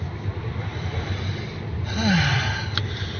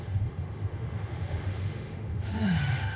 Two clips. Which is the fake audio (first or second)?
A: second